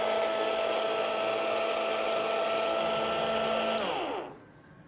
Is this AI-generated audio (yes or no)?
no